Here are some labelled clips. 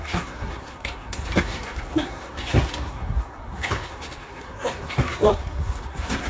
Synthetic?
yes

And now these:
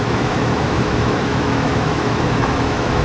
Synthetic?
yes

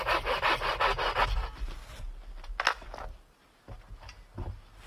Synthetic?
no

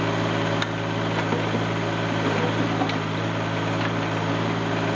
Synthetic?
no